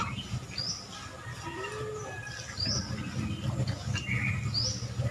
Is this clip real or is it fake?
real